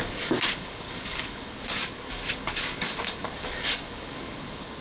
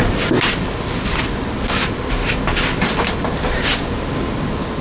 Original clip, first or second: second